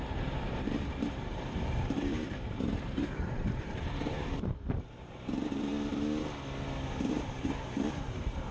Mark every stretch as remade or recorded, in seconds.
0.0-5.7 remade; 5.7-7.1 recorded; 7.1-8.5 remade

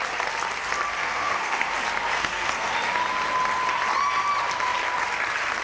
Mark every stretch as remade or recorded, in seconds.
0.0-1.0 recorded; 1.0-1.7 remade; 1.7-2.1 recorded; 2.1-2.7 remade; 2.7-5.6 recorded

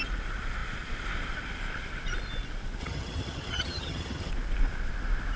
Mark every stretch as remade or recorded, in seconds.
0.0-2.8 recorded; 2.8-4.3 remade; 4.3-5.4 recorded

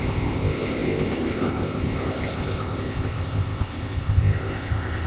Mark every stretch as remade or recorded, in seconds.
0.0-5.1 remade